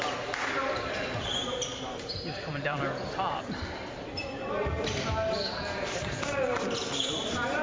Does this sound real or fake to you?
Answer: fake